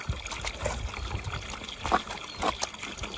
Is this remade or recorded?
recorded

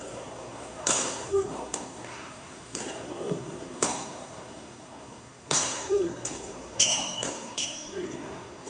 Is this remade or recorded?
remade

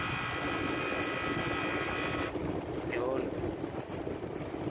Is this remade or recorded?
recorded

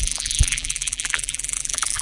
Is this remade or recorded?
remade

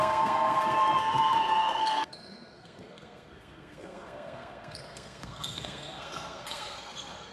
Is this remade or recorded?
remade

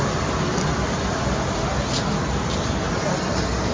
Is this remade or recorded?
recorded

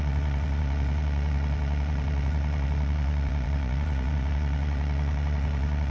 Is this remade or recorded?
remade